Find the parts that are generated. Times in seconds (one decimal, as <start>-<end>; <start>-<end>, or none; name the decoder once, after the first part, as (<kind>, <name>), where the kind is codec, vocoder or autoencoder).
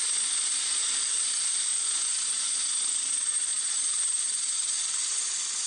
1.7-2.7 (vocoder, Vocos)